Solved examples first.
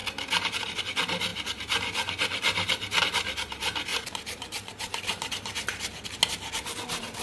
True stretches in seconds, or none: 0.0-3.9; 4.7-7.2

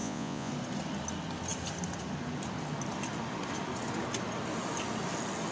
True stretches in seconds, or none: 0.5-5.5

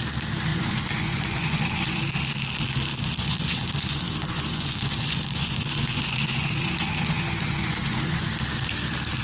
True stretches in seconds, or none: 0.0-0.5; 2.0-3.2; 8.2-9.2

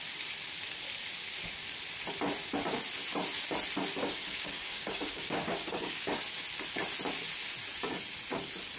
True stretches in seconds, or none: 0.0-4.0; 6.2-8.8

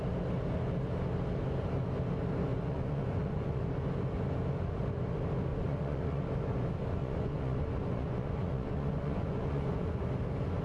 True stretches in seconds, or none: 0.0-2.5; 3.6-5.5; 6.2-7.0; 10.0-10.6

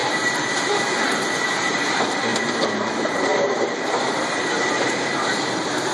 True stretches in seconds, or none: none